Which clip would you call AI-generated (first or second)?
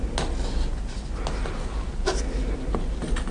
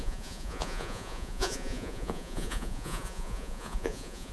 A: second